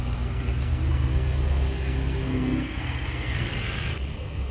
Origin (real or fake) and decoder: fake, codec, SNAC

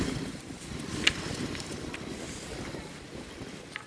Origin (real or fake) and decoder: real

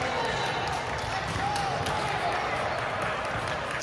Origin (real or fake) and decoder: real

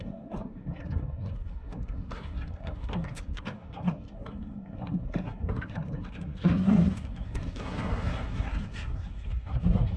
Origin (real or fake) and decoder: fake, codec, SNAC